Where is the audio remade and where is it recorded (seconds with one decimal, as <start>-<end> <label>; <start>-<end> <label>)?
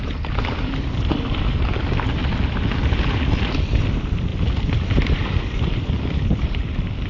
0.0-2.2 remade; 2.2-3.9 recorded; 3.9-7.1 remade